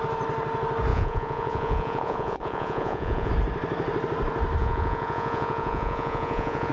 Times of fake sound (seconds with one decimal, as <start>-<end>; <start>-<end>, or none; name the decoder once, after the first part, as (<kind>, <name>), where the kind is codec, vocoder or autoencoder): 0.9-3.3 (vocoder, Vocos); 4.6-6.7